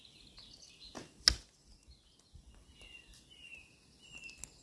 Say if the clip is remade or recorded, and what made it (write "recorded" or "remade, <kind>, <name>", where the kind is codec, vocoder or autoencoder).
recorded